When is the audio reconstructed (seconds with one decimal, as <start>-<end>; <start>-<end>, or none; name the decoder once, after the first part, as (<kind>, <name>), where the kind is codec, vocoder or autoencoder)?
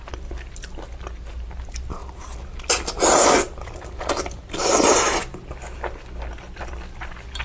none